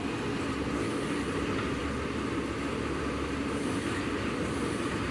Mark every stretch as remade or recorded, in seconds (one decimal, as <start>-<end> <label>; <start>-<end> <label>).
0.0-5.1 recorded